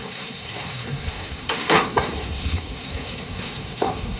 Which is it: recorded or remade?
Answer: remade